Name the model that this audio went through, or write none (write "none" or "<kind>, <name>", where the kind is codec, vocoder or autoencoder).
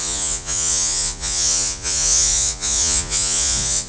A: vocoder, Vocos